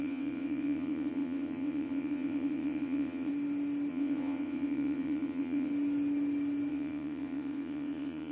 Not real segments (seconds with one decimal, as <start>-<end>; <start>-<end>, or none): 0.0-3.3; 3.9-5.7; 6.7-8.3